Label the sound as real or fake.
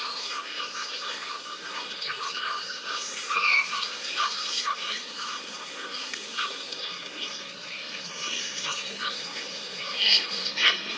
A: fake